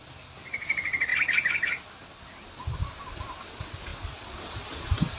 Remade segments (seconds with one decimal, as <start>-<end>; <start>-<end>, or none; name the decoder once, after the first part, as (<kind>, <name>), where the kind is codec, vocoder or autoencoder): none